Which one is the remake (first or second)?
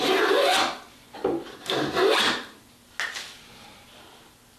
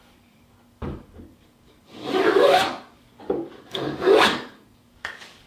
second